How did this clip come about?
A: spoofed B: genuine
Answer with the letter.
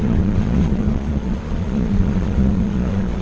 A